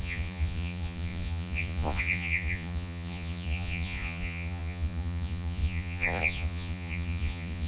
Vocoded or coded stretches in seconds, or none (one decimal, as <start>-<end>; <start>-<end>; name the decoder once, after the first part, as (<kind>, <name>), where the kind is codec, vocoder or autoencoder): 0.0-7.7 (vocoder, Vocos)